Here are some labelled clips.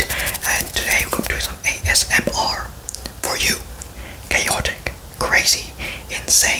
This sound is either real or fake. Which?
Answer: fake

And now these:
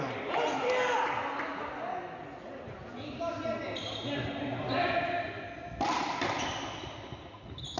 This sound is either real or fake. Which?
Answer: real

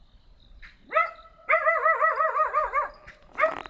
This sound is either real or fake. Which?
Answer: real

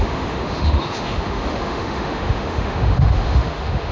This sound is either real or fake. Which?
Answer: fake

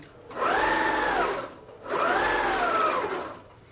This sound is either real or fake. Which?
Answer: real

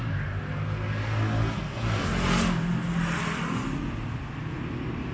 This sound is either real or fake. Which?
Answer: real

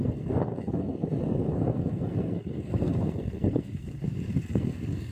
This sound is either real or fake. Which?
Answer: fake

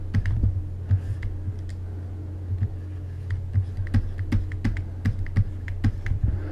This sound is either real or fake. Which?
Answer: real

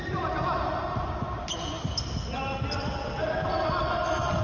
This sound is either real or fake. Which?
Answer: real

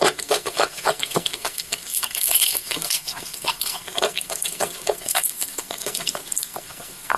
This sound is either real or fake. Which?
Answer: fake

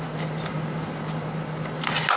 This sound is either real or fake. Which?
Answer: real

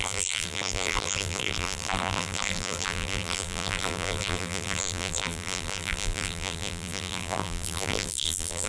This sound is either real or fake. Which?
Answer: fake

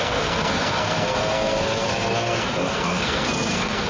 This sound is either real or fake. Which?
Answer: fake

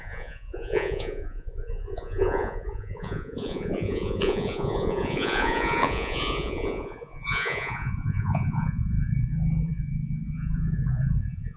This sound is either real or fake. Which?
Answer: fake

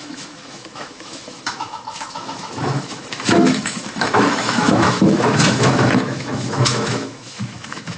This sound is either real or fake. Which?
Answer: fake